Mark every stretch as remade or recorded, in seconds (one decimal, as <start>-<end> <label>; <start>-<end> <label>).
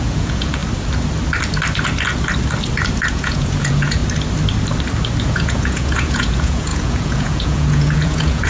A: 0.0-0.6 remade; 0.6-3.1 recorded; 3.1-4.0 remade; 4.0-5.2 recorded; 5.2-8.5 remade